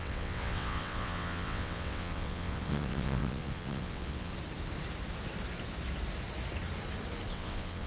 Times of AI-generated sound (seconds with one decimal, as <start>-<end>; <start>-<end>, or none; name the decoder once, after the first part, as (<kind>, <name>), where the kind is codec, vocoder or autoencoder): 0.0-4.3 (vocoder, WaveNeXt); 7.3-7.9